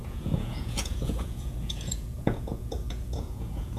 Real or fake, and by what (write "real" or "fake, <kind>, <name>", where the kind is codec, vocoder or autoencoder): fake, vocoder, Vocos